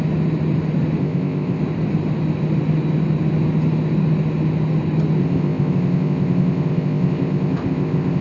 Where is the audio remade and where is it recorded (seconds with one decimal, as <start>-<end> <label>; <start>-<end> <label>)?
0.0-1.0 recorded; 1.0-1.6 remade; 1.6-5.2 recorded; 5.2-8.2 remade